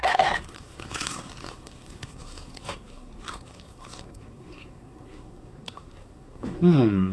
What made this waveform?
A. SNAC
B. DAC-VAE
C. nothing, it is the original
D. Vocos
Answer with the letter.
A